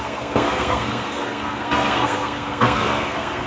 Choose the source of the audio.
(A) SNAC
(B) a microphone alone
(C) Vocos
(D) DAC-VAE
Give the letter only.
A